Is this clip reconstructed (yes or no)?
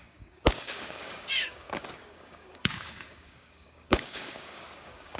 yes